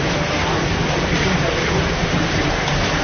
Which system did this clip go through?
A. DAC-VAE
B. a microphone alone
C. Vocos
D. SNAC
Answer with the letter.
B